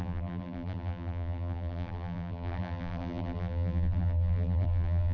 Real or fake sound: fake